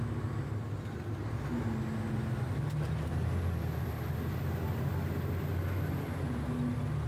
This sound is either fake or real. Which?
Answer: real